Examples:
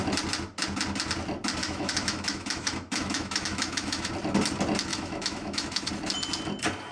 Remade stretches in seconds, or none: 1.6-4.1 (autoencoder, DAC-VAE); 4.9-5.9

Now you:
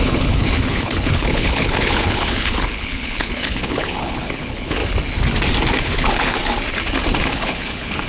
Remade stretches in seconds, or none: 0.0-4.8 (codec, HILCodec); 5.8-6.4; 7.3-8.1

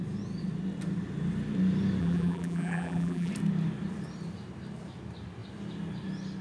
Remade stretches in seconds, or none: 2.0-3.3 (vocoder, BigVGAN v2)

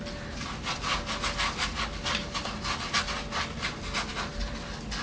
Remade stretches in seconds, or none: none

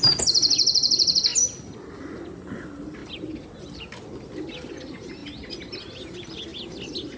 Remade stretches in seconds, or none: none

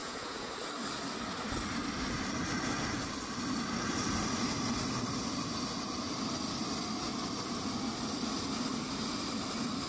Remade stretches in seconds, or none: 0.0-0.5 (vocoder, Vocos)